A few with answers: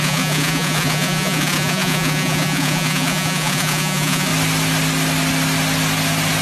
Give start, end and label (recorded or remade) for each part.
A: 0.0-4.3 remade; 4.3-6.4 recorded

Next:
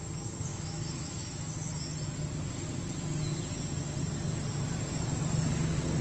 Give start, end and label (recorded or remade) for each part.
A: 0.0-0.5 recorded; 0.5-1.5 remade; 1.5-6.0 recorded

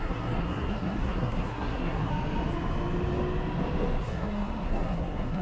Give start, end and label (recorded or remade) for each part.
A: 0.0-2.1 remade; 2.1-4.0 recorded; 4.0-5.4 remade

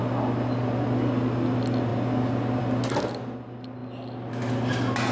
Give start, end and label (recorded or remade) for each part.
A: 0.0-5.1 recorded

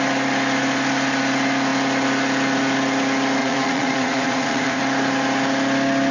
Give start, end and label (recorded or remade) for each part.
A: 0.0-3.4 recorded; 3.4-4.8 remade; 4.8-6.1 recorded

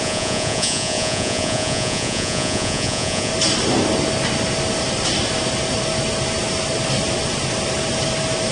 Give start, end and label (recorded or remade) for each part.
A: 0.0-3.3 remade; 3.3-8.5 recorded